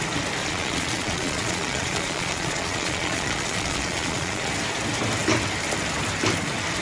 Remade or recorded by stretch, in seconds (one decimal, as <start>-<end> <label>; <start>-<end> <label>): 0.0-0.4 recorded; 0.4-4.5 remade; 4.5-6.8 recorded

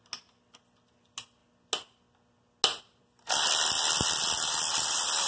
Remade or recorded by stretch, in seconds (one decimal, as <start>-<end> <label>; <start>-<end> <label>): 0.0-5.3 recorded

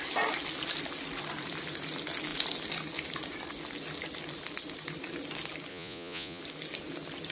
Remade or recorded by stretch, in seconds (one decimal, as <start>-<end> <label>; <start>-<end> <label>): 0.0-5.7 recorded; 5.7-6.4 remade; 6.4-7.3 recorded

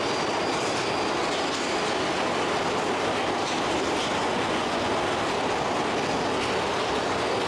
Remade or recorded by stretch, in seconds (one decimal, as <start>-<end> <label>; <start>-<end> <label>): 0.0-4.2 recorded; 4.2-4.9 remade; 4.9-7.5 recorded

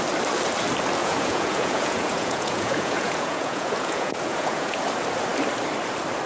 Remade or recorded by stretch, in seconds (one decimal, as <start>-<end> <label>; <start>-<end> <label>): 0.0-1.0 recorded; 1.0-4.8 remade; 4.8-6.3 recorded